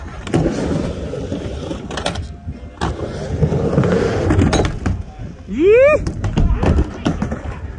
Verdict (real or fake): real